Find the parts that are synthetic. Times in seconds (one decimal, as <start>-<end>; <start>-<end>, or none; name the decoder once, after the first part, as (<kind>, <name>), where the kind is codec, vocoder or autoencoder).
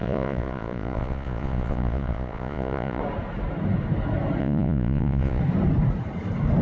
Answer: 0.0-3.0 (vocoder, Vocos); 4.4-5.4